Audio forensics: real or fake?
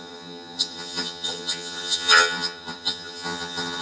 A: fake